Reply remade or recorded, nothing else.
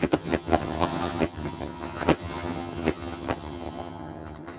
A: remade